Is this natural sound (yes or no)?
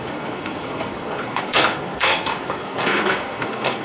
no